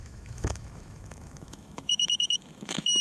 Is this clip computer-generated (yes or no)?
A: yes